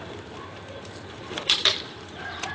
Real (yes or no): no